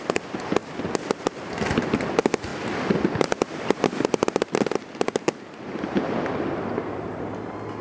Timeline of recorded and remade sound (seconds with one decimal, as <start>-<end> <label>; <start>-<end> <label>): 0.0-2.5 recorded; 2.5-7.2 remade; 7.2-7.8 recorded

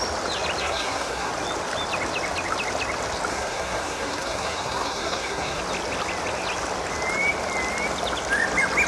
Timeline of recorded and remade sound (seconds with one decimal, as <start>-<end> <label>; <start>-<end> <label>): 0.0-0.6 recorded; 0.6-1.3 remade; 1.3-3.3 recorded; 3.3-5.6 remade; 5.6-8.9 recorded

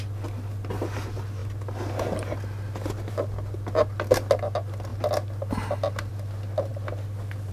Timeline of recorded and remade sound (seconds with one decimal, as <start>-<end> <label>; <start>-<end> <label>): 0.0-7.5 recorded

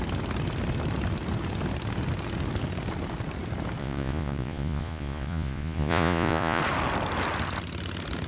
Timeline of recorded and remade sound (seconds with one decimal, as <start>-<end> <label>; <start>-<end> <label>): 0.0-3.8 recorded; 3.8-6.6 remade; 6.6-8.3 recorded

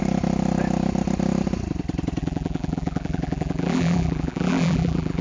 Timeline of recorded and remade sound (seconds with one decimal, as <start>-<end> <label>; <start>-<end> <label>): 0.0-2.2 recorded; 2.2-5.2 remade